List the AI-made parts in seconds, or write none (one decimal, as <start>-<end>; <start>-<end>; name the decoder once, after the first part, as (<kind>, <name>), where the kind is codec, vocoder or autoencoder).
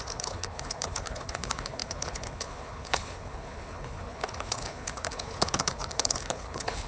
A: 0.0-6.9 (codec, HILCodec)